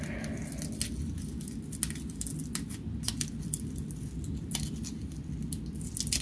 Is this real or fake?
real